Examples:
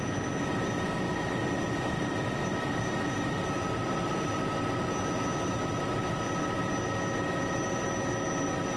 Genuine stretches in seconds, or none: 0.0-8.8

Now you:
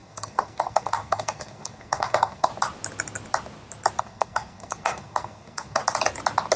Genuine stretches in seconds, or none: 2.5-4.0; 5.8-6.6

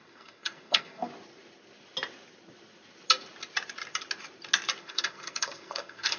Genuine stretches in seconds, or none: 1.1-4.8

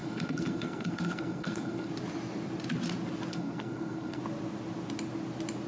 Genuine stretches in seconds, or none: 1.9-3.3; 4.2-5.7

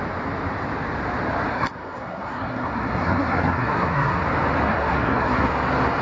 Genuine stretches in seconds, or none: 0.0-1.5; 4.2-4.7; 5.5-6.0

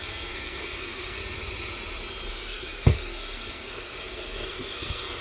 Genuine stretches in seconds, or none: 1.2-2.3